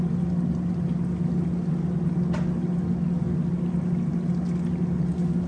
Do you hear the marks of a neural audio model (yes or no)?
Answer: no